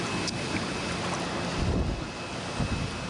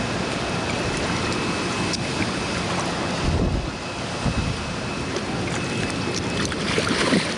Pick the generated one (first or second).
second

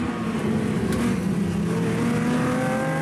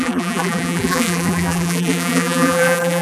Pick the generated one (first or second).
second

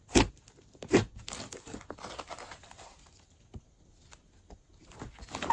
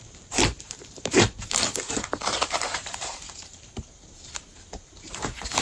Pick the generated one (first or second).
second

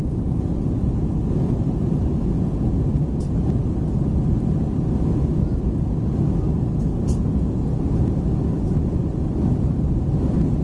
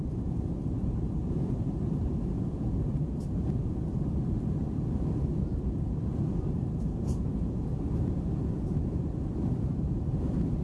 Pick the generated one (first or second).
second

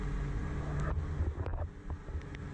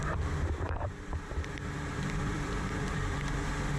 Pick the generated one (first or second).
second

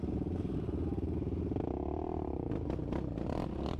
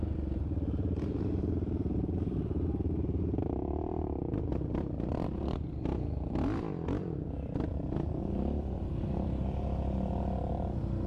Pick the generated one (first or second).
second